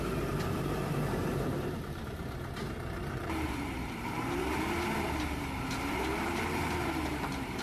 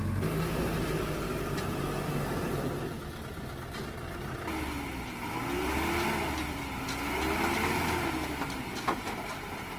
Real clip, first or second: second